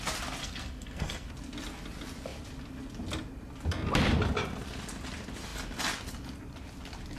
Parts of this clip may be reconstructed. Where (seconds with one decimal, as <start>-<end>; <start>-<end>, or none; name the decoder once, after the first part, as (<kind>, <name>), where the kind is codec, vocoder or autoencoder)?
0.4-1.3 (codec, SNAC)